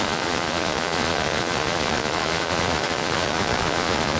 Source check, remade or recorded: remade